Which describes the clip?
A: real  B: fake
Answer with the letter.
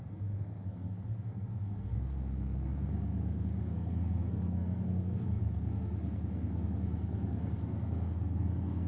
B